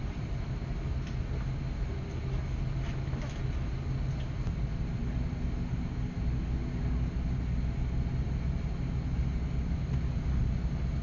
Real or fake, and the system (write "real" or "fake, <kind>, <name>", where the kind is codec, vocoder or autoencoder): real